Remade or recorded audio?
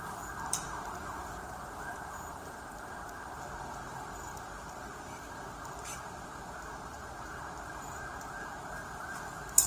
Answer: remade